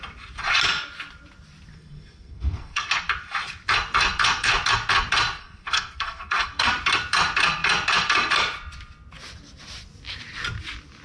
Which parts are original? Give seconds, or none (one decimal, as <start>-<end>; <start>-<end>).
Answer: 0.0-1.7; 2.9-5.4; 6.7-11.0